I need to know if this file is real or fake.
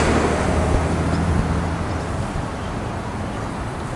real